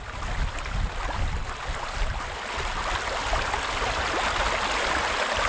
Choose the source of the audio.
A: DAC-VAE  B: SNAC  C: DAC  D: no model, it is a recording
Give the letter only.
D